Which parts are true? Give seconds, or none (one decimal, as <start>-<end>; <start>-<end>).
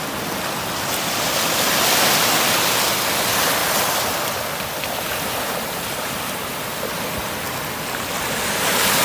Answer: 0.0-3.6; 6.4-9.0